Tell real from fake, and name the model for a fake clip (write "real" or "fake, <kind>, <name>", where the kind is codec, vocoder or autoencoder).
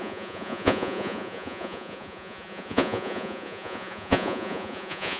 fake, vocoder, Vocos